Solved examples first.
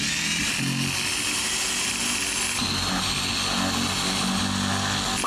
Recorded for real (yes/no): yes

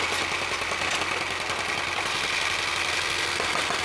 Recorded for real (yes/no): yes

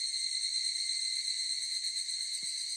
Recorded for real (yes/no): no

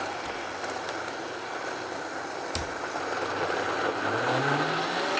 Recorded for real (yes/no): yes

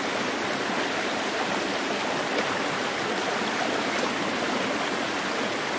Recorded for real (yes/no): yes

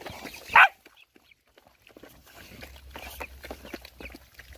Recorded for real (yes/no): yes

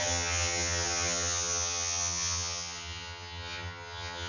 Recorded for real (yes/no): no